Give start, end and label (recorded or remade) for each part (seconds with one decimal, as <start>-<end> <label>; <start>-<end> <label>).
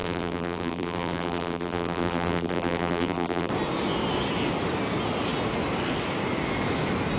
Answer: 0.0-3.5 remade; 3.5-7.2 recorded